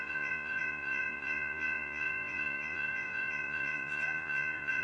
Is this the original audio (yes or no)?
no